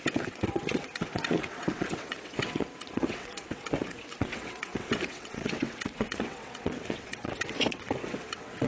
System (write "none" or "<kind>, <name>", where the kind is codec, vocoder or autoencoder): vocoder, WaveNeXt